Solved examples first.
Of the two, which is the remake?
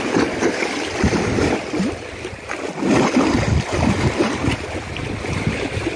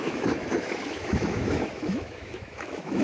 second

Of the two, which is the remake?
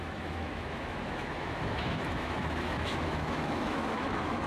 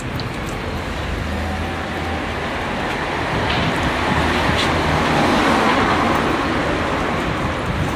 first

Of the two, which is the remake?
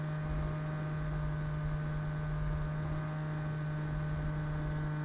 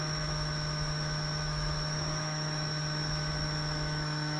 second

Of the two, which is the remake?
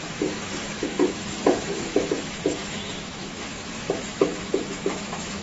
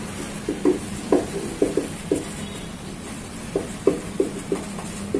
first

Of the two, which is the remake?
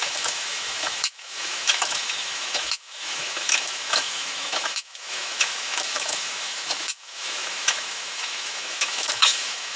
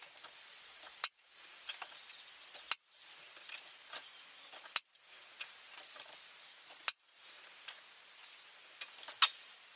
first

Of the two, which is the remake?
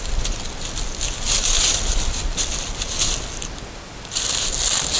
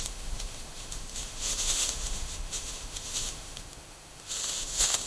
second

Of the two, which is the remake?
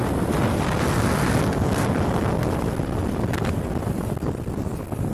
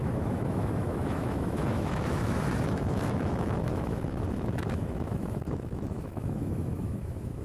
second